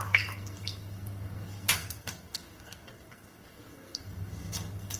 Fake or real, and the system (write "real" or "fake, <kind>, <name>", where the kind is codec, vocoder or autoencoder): fake, codec, SNAC